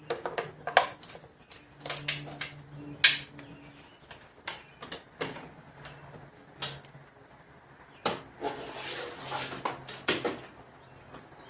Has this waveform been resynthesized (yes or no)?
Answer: no